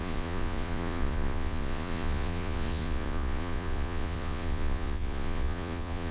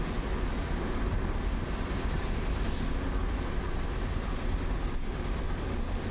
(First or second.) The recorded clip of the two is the second